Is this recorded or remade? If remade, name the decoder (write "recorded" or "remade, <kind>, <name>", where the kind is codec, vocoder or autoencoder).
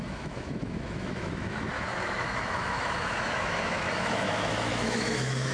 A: remade, autoencoder, DAC-VAE